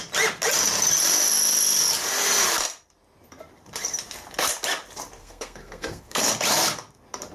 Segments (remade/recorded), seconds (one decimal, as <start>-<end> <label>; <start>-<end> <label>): 0.0-5.2 recorded; 5.2-6.3 remade; 6.3-7.3 recorded